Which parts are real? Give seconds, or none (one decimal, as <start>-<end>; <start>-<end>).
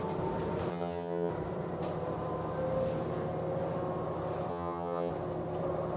0.0-0.7; 1.3-4.5; 5.1-6.0